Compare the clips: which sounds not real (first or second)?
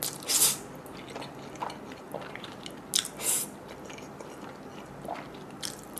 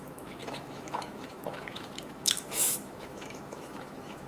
second